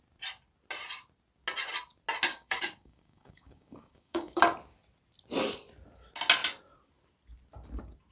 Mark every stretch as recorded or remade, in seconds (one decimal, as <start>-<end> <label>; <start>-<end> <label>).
0.0-2.3 recorded; 2.3-4.4 remade; 4.4-8.1 recorded